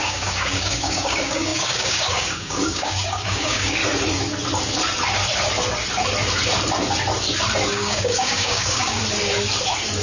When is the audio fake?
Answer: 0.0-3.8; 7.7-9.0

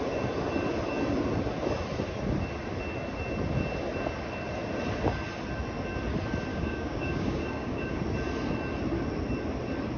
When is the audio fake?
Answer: 6.5-8.0

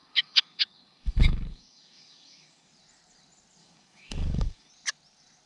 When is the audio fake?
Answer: 0.0-2.7; 3.6-4.7